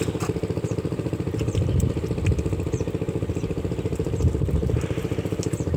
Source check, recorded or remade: remade